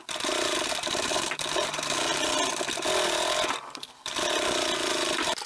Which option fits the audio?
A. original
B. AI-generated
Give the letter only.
A